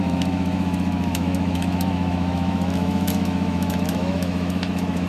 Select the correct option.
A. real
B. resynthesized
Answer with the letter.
B